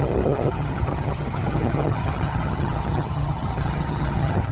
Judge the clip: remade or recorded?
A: remade